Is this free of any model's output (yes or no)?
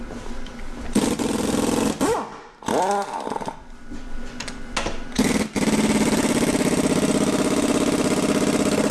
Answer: yes